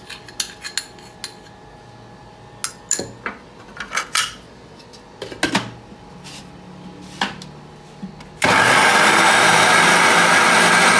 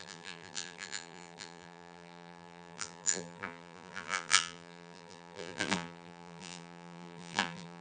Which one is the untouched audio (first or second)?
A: first